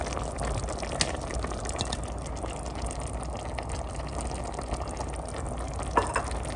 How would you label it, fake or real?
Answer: real